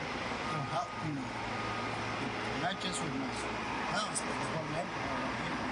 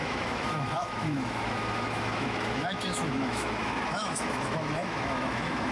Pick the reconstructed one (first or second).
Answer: second